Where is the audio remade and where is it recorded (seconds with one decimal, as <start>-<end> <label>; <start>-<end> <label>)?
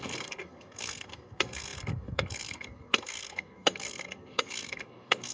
0.0-5.3 remade